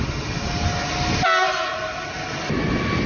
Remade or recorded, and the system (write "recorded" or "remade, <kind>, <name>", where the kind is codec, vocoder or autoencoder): recorded